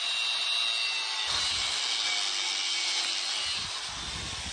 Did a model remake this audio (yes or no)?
no